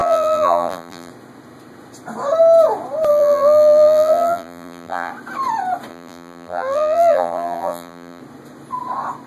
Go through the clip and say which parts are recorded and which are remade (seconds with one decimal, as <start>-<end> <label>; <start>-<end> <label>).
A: 0.0-1.1 remade; 1.1-3.1 recorded; 3.1-5.1 remade; 5.1-5.9 recorded; 5.9-8.2 remade; 8.2-9.3 recorded